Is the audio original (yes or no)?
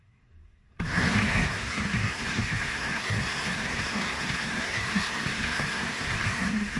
no